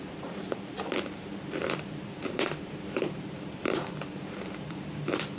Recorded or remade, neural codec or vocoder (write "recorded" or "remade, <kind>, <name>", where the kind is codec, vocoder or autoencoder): remade, vocoder, BigVGAN v2